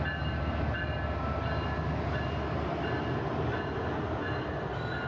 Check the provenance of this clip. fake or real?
real